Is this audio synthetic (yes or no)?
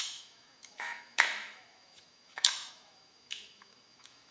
yes